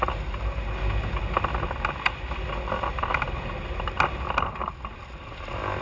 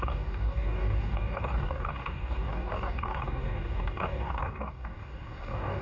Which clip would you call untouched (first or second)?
first